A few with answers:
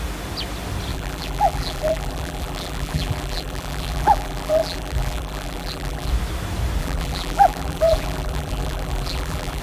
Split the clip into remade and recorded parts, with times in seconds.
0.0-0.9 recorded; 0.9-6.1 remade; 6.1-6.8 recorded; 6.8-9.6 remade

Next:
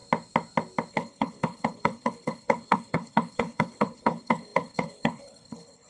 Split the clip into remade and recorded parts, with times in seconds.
0.0-0.9 recorded; 0.9-5.9 remade

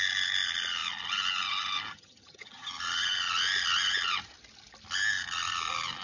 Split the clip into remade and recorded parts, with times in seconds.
0.0-1.9 recorded; 1.9-2.7 remade; 2.7-6.0 recorded

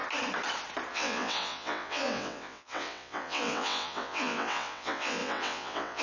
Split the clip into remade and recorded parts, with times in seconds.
0.0-0.9 recorded; 0.9-6.0 remade

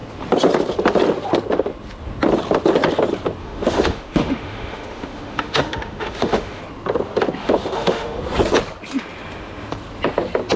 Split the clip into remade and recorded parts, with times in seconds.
0.0-3.4 recorded; 3.4-6.6 remade; 6.6-7.4 recorded; 7.4-8.2 remade; 8.2-10.6 recorded